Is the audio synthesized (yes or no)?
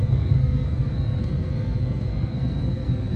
yes